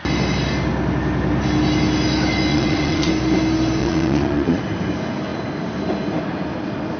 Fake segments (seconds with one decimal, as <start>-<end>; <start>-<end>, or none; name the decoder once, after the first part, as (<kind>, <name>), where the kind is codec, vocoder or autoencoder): 2.5-3.1 (vocoder, Vocos); 3.8-4.6